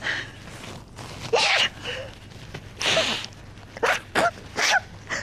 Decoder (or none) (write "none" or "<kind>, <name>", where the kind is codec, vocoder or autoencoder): none